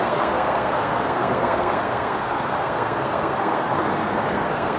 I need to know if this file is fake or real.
fake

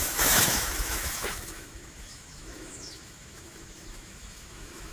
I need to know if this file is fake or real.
fake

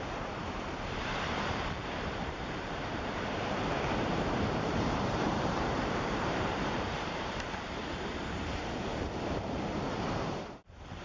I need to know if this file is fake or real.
fake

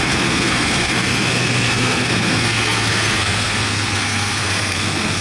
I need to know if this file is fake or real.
fake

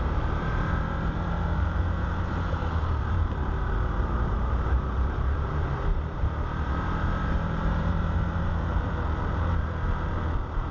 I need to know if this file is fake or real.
fake